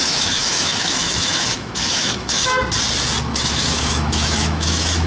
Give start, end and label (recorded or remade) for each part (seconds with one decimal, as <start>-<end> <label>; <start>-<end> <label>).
0.0-2.5 remade; 2.5-3.3 recorded; 3.3-5.1 remade